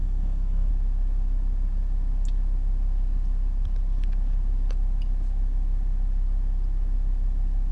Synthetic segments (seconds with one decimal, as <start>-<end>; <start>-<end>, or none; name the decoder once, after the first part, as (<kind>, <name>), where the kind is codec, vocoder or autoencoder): 0.0-0.7 (codec, SNAC)